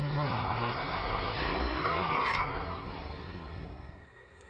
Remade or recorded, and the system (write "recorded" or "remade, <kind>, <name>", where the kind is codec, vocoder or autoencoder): remade, codec, SNAC